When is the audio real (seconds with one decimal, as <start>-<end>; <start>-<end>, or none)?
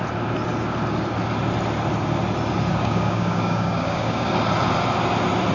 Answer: 0.0-2.7; 4.3-5.5